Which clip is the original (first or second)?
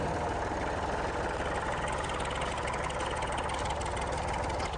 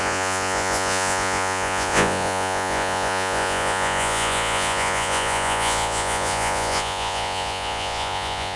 first